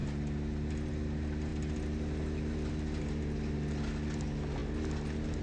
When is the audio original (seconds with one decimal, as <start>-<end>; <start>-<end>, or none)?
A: 0.0-5.4